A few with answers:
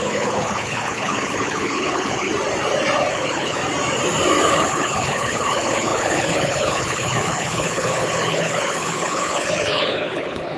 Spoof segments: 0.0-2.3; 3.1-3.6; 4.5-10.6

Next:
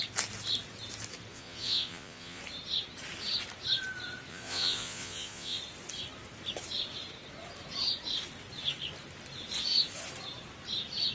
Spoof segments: 1.3-2.4; 4.3-5.6

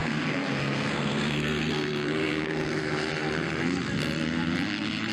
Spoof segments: 0.0-3.1

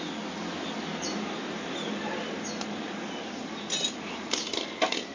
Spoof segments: none

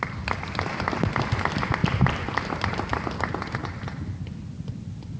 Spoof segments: none